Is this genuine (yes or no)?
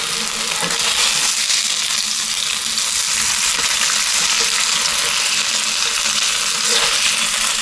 yes